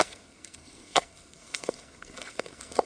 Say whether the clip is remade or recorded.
remade